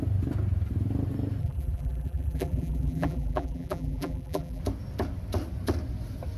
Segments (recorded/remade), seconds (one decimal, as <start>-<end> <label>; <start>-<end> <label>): 0.0-1.4 recorded; 1.4-4.6 remade; 4.6-6.4 recorded